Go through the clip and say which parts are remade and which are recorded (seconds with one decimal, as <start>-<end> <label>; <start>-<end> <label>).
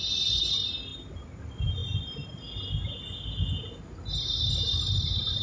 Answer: 0.0-0.9 recorded; 0.9-1.4 remade; 1.4-5.4 recorded